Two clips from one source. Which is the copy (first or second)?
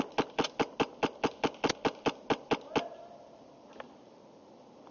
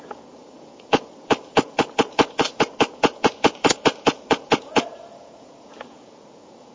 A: second